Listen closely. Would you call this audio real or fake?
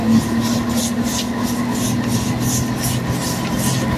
real